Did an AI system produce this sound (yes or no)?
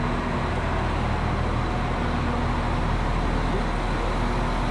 no